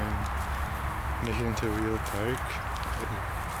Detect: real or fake real